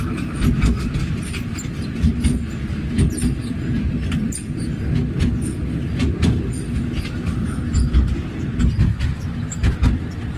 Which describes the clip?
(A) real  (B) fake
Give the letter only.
A